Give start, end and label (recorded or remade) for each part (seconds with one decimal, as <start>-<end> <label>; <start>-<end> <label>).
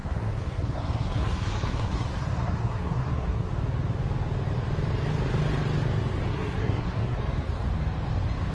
0.0-3.5 remade; 3.5-6.3 recorded; 6.3-7.2 remade; 7.2-8.5 recorded